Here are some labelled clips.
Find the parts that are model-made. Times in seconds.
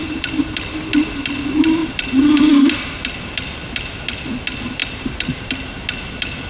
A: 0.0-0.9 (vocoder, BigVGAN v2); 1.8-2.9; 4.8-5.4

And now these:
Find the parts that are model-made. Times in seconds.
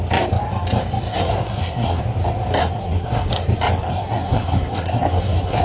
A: 1.1-2.0 (codec, SNAC); 2.6-3.3; 3.9-5.6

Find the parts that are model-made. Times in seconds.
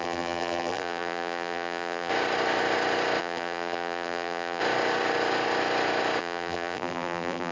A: 0.0-2.1 (vocoder, BigVGAN v2); 3.2-4.6; 6.2-7.5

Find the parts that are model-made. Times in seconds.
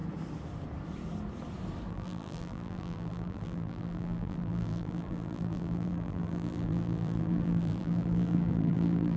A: 1.9-9.2 (vocoder, BigVGAN v2)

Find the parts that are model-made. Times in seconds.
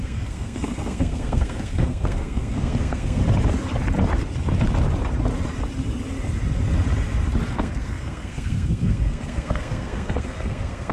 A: 0.0-3.2 (codec, SNAC); 7.5-10.9